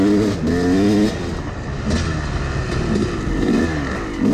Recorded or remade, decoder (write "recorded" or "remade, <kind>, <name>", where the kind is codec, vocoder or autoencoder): recorded